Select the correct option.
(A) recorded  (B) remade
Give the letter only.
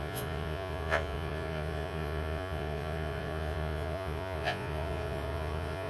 B